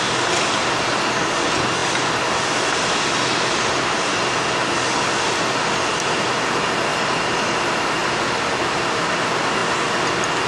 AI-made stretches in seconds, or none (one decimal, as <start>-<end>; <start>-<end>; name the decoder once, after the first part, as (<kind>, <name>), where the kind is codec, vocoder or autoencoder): none

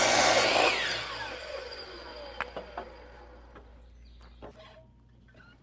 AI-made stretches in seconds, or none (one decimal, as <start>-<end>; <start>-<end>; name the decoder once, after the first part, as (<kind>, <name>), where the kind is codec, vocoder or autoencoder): 0.0-0.5 (vocoder, Vocos); 1.4-2.1

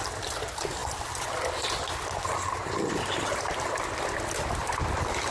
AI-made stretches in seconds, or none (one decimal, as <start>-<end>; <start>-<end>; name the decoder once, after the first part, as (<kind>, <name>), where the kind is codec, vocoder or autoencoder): none

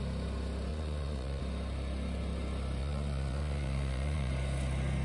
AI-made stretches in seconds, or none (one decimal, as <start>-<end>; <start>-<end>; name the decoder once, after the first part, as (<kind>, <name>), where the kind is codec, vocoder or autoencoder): 0.7-1.4 (vocoder, Vocos); 2.8-4.3